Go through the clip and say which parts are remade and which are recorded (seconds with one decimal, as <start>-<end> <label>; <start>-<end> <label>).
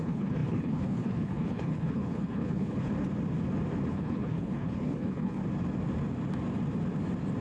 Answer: 0.0-2.9 remade; 2.9-3.9 recorded; 3.9-5.4 remade; 5.4-7.4 recorded